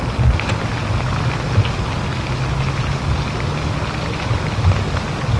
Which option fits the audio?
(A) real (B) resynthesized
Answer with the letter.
A